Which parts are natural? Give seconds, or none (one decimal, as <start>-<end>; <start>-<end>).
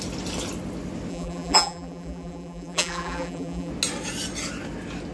0.0-1.1; 3.7-5.1